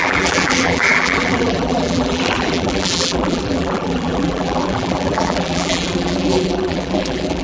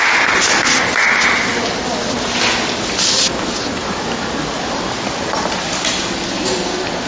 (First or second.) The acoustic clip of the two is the second